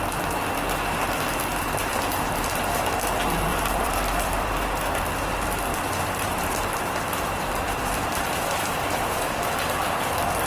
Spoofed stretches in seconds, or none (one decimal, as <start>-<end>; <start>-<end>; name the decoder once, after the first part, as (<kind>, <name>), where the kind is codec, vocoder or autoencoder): 1.8-2.6 (vocoder, BigVGAN v2); 3.5-5.0; 5.7-9.3